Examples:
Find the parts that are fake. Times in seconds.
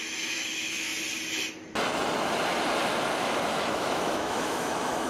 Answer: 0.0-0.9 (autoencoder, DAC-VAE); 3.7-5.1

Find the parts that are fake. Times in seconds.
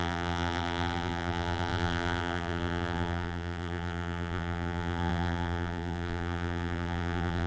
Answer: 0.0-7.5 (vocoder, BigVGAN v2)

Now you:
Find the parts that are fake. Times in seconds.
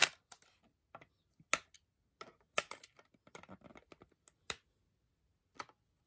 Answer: none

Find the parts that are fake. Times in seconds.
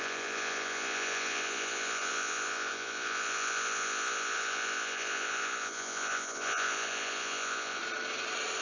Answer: 0.0-7.8 (vocoder, Vocos)